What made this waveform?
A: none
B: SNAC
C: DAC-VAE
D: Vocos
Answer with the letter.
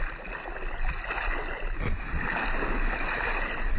A